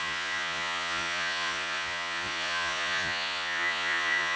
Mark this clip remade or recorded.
remade